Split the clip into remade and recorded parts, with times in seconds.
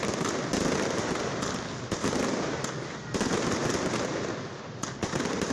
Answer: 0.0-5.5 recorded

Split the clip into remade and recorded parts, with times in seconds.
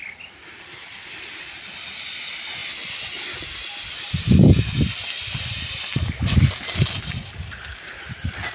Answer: 0.0-8.5 recorded